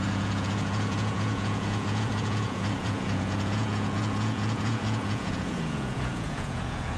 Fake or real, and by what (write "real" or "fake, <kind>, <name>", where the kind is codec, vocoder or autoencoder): fake, vocoder, Vocos